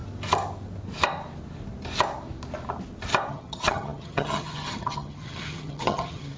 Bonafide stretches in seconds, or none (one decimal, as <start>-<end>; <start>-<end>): 0.0-3.3